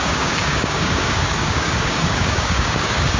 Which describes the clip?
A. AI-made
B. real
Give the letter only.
A